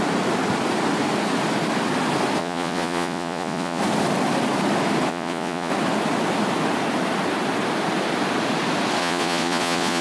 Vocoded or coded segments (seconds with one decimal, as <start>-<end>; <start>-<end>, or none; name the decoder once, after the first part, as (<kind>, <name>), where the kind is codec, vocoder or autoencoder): 2.4-3.8 (vocoder, Vocos); 5.1-5.7; 9.0-10.0